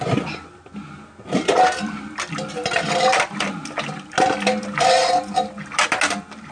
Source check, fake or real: real